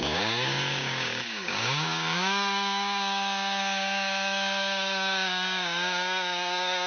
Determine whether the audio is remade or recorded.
remade